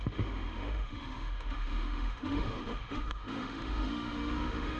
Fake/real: fake